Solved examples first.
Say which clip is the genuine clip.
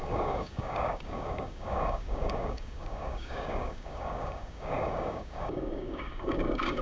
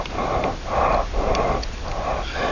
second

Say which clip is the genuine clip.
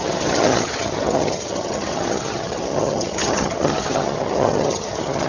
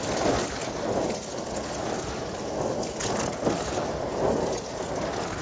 second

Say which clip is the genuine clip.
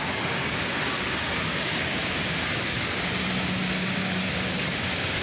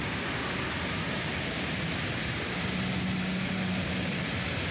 second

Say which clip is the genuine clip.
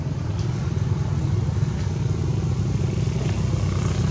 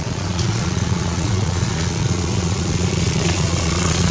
first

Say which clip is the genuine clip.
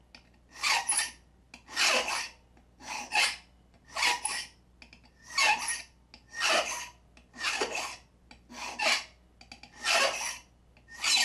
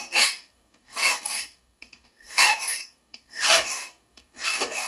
first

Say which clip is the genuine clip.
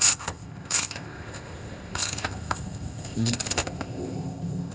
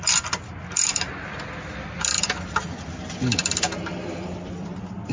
second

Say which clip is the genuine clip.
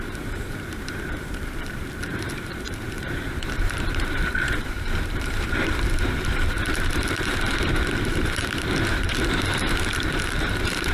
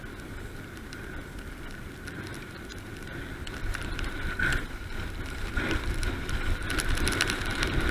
second